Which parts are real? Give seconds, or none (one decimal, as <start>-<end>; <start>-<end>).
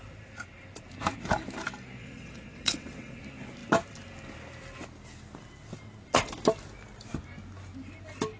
0.0-2.0; 3.2-8.4